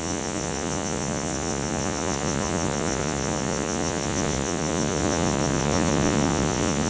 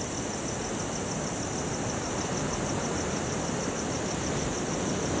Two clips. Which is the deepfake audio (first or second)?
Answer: first